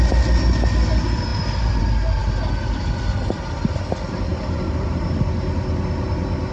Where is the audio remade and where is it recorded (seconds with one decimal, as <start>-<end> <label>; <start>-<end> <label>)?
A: 0.0-4.3 recorded; 4.3-5.0 remade; 5.0-6.5 recorded